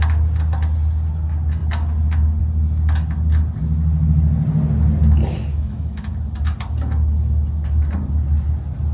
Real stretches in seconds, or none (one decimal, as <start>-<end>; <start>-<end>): 0.0-5.5; 6.1-8.9